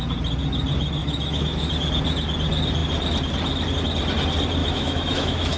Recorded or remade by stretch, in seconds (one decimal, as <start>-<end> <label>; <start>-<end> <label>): 0.0-1.0 recorded; 1.0-1.7 remade; 1.7-4.6 recorded; 4.6-5.6 remade